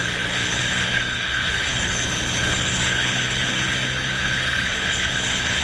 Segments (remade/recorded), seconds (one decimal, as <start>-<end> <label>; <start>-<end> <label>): 0.0-5.6 remade